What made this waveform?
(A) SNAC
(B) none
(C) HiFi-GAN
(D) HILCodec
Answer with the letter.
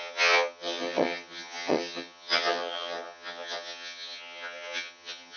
C